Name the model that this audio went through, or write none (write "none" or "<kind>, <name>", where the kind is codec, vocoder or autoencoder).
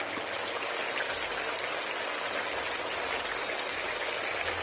none